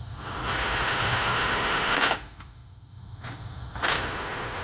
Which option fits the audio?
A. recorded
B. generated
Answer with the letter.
B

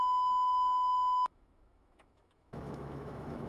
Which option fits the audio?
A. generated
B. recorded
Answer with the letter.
A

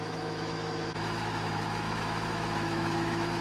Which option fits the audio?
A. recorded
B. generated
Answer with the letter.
B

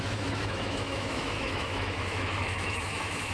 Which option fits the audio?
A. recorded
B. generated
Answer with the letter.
B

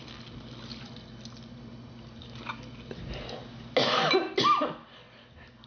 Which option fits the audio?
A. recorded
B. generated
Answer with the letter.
A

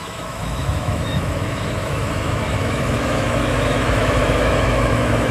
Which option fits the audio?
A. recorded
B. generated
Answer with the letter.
B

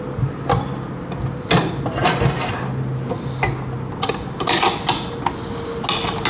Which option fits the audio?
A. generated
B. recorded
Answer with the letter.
B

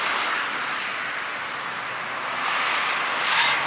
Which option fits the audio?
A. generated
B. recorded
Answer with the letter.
B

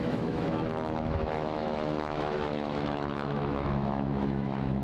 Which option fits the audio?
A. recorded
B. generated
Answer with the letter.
B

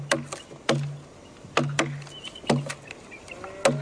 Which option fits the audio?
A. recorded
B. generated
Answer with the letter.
A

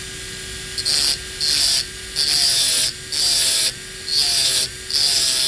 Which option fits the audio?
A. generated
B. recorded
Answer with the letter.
B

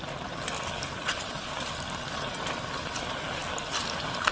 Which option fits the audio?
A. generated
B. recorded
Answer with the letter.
B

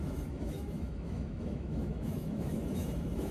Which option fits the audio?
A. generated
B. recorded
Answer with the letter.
A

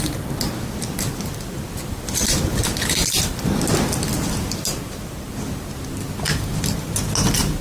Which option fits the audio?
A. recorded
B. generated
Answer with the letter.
A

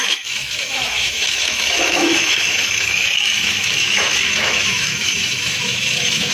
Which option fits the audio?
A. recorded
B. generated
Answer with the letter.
B